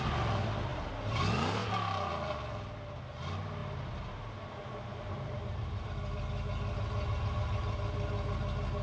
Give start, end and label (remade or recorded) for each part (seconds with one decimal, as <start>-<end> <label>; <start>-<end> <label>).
0.0-3.6 recorded; 3.6-5.9 remade; 5.9-8.8 recorded